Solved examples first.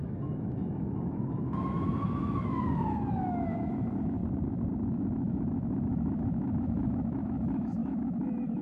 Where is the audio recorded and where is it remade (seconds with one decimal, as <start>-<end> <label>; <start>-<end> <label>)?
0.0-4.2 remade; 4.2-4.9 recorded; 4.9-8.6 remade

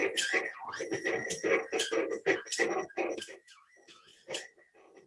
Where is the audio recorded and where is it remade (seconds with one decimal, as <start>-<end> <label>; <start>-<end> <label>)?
0.0-3.1 recorded; 3.1-4.1 remade; 4.1-5.1 recorded

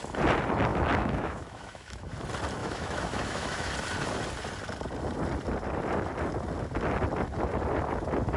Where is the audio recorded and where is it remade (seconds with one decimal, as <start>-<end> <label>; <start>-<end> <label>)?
0.0-0.7 recorded; 0.7-2.1 remade; 2.1-2.6 recorded; 2.6-3.7 remade; 3.7-8.4 recorded

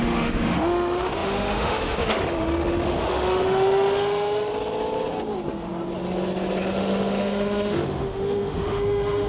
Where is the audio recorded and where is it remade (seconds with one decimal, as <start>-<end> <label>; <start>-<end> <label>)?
0.0-4.5 remade; 4.5-6.6 recorded; 6.6-9.3 remade